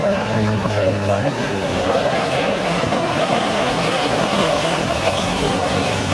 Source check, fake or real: fake